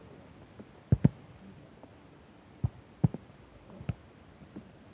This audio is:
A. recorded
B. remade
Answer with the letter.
A